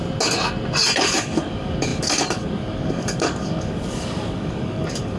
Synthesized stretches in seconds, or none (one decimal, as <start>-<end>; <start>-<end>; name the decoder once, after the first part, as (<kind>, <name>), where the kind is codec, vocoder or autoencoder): 1.0-5.2 (codec, DAC)